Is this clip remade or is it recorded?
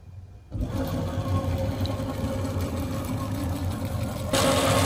recorded